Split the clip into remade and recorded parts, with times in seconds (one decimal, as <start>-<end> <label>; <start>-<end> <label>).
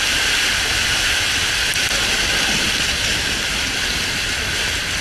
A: 0.0-5.0 recorded